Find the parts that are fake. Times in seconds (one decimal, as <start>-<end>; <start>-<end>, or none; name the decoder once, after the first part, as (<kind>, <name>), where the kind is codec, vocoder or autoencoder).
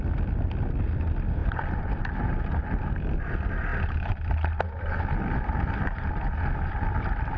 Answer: 1.4-1.9 (vocoder, BigVGAN v2)